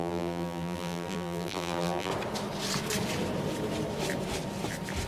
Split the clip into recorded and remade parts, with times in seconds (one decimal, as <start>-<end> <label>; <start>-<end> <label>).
0.0-2.1 remade; 2.1-5.1 recorded